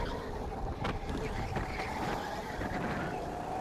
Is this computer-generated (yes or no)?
no